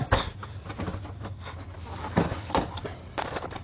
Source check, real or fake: real